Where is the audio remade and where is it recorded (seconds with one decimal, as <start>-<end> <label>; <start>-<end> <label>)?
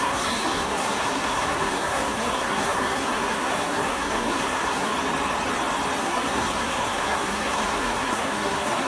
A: 0.0-4.9 remade; 4.9-6.0 recorded; 6.0-8.9 remade